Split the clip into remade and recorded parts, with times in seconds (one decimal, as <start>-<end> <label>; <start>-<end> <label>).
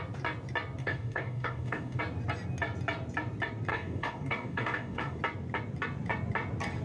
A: 0.0-0.8 recorded; 0.8-2.0 remade; 2.0-3.7 recorded; 3.7-5.2 remade; 5.2-6.8 recorded